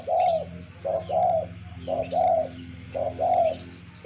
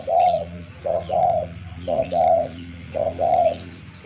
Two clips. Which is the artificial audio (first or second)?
second